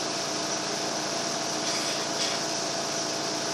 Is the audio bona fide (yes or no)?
yes